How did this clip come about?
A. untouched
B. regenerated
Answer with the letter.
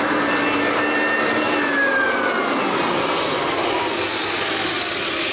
A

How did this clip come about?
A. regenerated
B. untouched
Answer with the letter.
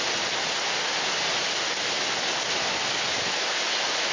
B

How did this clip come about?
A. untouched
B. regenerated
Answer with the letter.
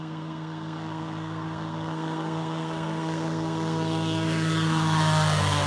B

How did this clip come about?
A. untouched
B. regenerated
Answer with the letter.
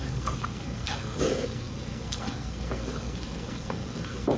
B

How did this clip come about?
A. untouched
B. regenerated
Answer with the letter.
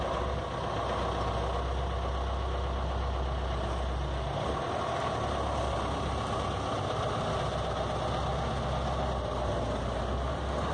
A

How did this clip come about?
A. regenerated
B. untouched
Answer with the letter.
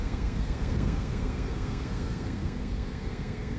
A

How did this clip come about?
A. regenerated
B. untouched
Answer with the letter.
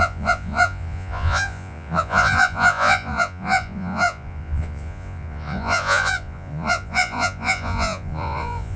A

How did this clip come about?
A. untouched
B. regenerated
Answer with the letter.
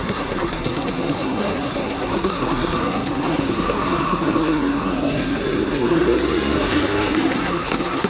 B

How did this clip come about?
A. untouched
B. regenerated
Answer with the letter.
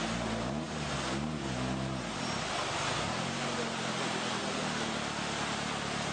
A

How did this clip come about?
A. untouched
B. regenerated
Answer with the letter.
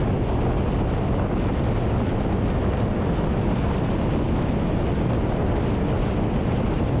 A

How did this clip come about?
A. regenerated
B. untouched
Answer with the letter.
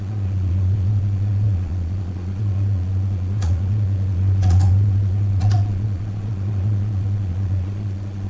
A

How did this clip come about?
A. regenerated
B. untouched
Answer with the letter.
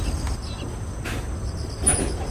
B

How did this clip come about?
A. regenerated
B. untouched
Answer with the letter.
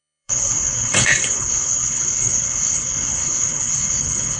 A